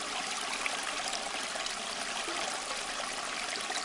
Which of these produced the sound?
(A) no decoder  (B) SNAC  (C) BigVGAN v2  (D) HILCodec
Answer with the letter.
A